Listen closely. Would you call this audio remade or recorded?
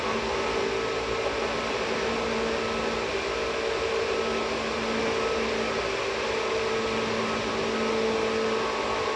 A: recorded